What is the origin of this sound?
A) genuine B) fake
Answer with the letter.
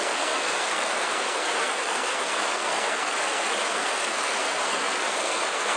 B